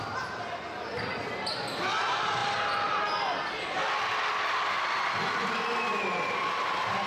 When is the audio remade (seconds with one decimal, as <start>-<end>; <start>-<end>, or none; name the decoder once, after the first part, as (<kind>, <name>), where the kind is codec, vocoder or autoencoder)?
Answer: none